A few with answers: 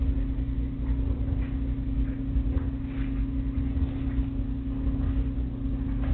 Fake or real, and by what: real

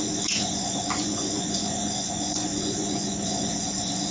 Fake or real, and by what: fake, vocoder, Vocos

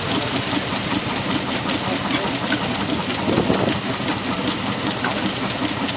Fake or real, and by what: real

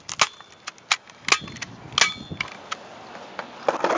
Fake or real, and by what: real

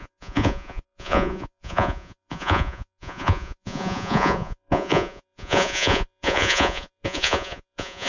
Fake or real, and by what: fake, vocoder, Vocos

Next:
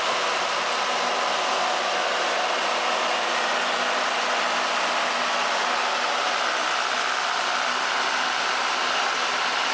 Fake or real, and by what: real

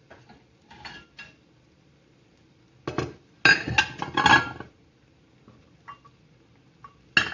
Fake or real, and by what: real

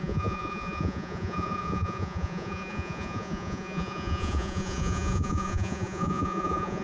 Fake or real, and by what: fake, vocoder, Vocos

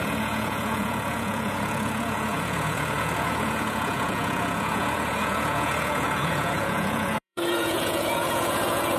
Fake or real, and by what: fake, vocoder, Vocos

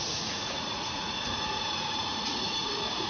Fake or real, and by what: fake, vocoder, Vocos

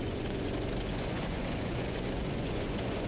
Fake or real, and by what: fake, vocoder, Vocos